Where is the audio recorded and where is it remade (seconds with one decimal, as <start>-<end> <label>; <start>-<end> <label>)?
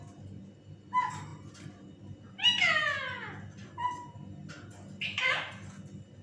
0.0-6.2 recorded